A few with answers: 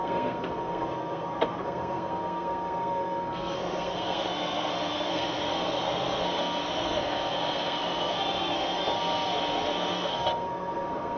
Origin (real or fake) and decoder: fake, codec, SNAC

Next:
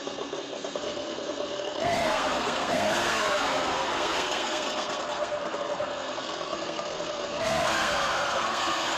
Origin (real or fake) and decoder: fake, codec, SNAC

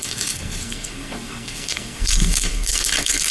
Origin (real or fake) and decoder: fake, codec, SNAC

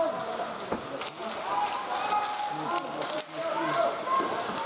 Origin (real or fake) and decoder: real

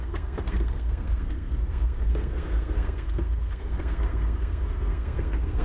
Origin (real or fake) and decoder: fake, codec, SNAC